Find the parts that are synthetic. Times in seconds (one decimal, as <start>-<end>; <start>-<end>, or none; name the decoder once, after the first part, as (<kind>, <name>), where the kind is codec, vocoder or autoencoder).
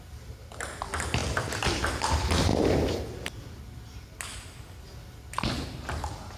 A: none